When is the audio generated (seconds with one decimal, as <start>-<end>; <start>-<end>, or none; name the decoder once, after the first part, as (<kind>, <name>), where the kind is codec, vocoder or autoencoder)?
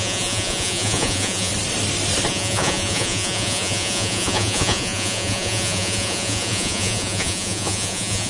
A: 0.0-1.5 (vocoder, Vocos); 2.3-8.3